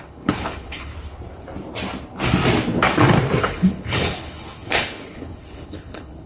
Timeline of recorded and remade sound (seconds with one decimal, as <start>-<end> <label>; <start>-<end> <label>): 0.0-0.9 remade; 0.9-3.4 recorded; 3.4-6.3 remade

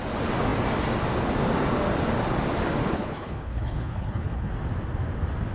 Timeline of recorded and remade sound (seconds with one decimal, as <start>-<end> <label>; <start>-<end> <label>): 0.0-2.8 recorded; 2.8-4.5 remade; 4.5-5.5 recorded

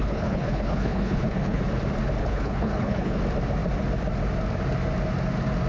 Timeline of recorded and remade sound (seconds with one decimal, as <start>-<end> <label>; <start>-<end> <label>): 0.0-1.6 remade; 1.6-2.2 recorded; 2.2-3.2 remade; 3.2-5.7 recorded

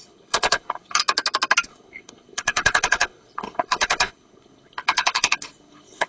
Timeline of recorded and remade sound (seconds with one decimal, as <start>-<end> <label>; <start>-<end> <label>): 0.0-1.0 remade; 1.0-1.7 recorded; 1.7-6.1 remade

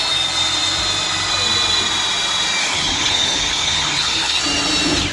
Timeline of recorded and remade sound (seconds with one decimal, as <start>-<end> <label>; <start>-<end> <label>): 0.0-2.6 recorded; 2.6-4.4 remade; 4.4-5.1 recorded

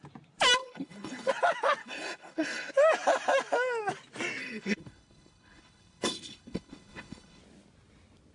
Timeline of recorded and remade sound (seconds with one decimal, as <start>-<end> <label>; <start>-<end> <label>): 0.0-0.6 recorded; 0.6-1.3 remade; 1.3-1.8 recorded; 1.8-2.7 remade; 2.7-4.4 recorded; 4.4-7.4 remade; 7.4-8.3 recorded

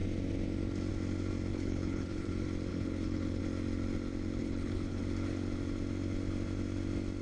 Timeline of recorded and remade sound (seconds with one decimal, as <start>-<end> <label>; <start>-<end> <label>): 0.0-1.5 recorded; 1.5-2.3 remade; 2.3-2.7 recorded; 2.7-3.4 remade; 3.4-4.4 recorded; 4.4-5.0 remade; 5.0-7.2 recorded